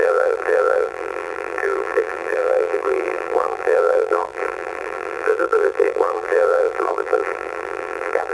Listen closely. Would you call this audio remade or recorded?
remade